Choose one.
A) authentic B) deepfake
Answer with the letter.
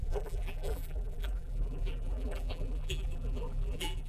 B